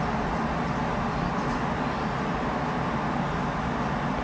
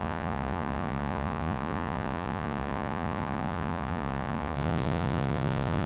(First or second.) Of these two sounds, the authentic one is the first